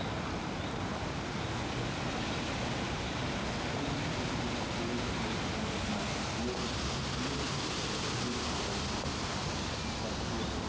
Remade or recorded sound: recorded